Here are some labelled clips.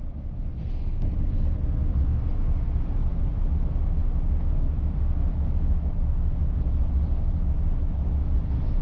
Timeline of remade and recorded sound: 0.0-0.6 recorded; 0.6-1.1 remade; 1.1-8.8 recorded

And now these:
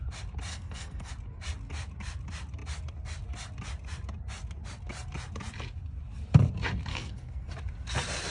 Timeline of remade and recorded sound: 0.0-0.5 recorded; 0.5-1.1 remade; 1.1-6.9 recorded; 6.9-7.5 remade; 7.5-8.3 recorded

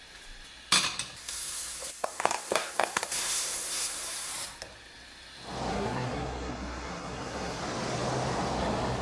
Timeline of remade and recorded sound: 0.0-1.2 recorded; 1.2-4.3 remade; 4.3-5.7 recorded; 5.7-7.6 remade; 7.6-9.0 recorded